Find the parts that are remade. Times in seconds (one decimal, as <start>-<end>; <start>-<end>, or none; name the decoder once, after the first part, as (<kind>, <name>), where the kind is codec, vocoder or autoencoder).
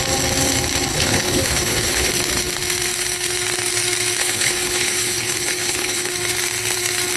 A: 0.9-2.1 (codec, HILCodec); 4.2-6.1